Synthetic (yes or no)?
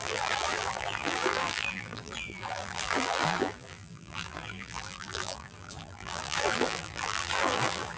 yes